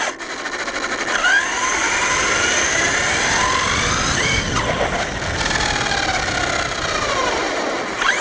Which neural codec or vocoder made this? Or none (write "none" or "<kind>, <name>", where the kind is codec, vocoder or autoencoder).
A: none